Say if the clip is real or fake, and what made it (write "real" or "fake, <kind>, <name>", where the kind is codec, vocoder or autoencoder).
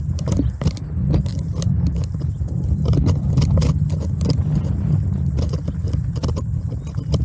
real